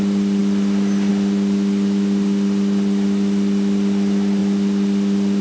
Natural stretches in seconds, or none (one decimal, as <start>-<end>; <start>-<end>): 0.0-5.4